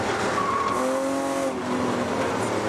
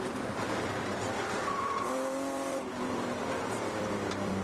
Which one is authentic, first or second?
first